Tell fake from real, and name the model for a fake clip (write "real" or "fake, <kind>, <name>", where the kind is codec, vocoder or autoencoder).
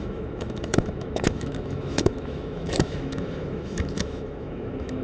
fake, autoencoder, DAC-VAE